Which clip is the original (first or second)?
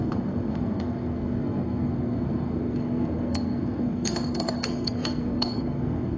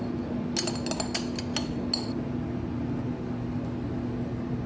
second